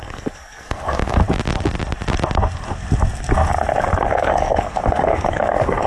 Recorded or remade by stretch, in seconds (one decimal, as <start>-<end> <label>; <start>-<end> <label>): 0.0-1.2 remade; 1.2-4.1 recorded; 4.1-5.9 remade